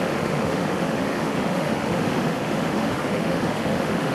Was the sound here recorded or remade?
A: remade